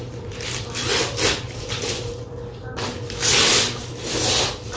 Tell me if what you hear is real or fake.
real